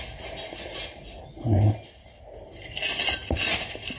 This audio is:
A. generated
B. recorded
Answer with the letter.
B